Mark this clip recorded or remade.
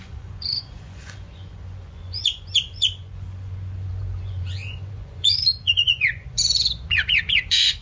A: remade